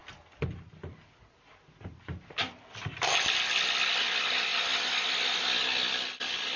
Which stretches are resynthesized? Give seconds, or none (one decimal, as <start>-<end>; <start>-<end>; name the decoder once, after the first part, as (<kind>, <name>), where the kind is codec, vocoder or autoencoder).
none